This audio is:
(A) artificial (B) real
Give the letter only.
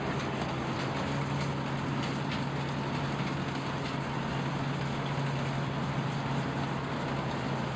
B